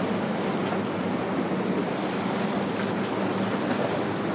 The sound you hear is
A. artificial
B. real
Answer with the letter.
B